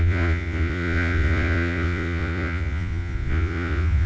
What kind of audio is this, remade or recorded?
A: remade